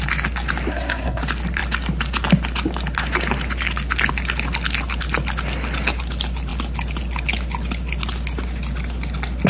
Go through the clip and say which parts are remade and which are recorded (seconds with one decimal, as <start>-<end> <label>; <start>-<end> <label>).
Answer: 0.0-0.7 recorded; 0.7-1.2 remade; 1.2-9.5 recorded